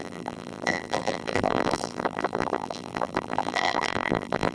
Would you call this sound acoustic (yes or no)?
no